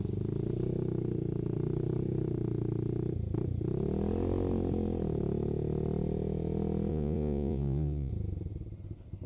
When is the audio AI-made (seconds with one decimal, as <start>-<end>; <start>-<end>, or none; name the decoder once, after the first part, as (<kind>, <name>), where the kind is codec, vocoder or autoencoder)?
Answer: 6.9-8.1 (vocoder, Vocos)